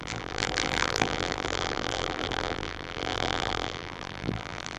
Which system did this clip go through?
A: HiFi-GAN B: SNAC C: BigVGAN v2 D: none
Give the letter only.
C